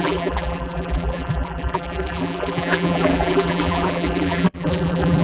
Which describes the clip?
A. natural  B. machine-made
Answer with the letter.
B